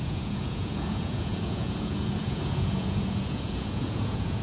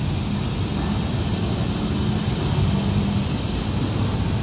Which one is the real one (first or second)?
second